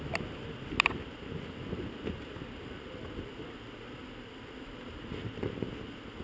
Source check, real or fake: real